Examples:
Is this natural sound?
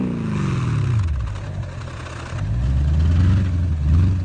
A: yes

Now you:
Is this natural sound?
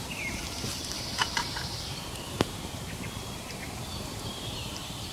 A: no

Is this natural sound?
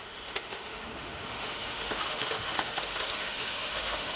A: no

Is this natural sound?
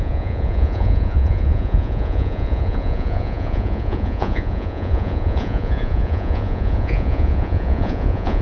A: no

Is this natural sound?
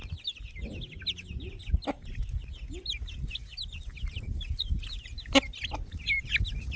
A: yes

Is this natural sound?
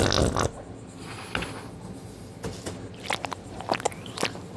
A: yes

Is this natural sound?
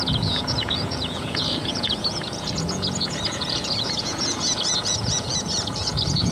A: no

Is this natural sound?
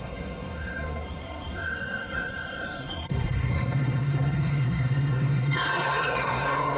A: no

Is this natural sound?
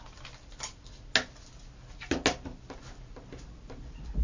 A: yes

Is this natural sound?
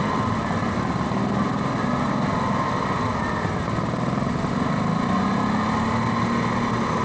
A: yes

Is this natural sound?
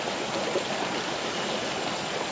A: yes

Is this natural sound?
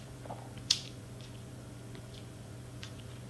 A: no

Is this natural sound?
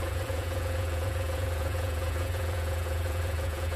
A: no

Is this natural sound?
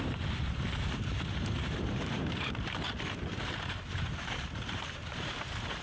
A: no